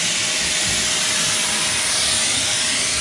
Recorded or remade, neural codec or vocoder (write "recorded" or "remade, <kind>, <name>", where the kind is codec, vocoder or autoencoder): recorded